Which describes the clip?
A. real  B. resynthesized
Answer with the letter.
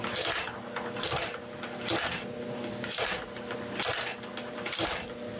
A